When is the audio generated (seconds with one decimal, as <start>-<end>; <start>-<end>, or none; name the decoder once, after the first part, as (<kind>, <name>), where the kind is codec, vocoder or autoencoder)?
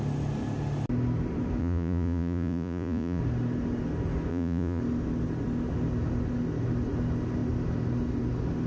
1.6-3.2 (vocoder, Vocos); 4.3-4.8